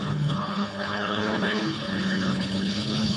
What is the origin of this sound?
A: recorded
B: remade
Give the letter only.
B